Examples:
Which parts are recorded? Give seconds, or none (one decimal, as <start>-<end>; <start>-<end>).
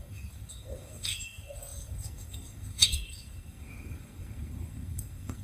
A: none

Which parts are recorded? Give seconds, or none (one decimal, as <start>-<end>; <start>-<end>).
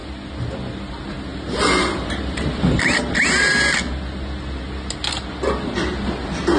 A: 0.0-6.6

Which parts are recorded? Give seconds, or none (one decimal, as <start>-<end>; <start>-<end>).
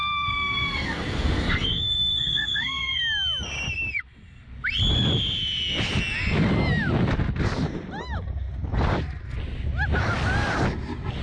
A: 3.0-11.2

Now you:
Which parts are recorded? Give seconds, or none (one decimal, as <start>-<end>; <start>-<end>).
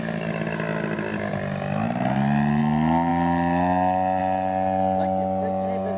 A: 0.0-6.0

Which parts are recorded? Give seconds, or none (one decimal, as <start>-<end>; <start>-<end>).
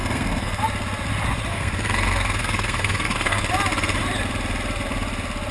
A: 0.6-1.5; 3.5-5.5